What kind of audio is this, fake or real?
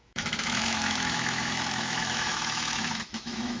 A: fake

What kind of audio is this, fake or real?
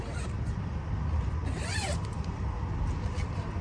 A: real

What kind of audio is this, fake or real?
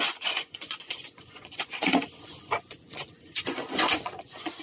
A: fake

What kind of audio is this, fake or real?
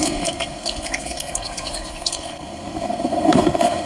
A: fake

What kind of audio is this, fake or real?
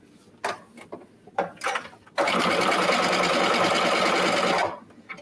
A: real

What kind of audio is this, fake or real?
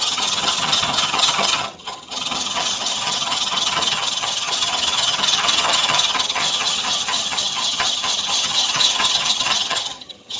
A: fake